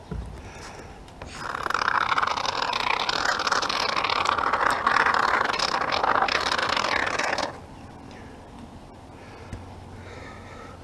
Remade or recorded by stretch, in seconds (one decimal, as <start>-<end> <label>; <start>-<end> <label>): 0.0-10.8 recorded